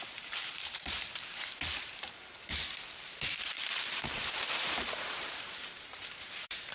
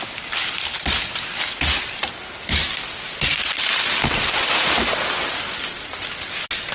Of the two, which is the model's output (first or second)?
first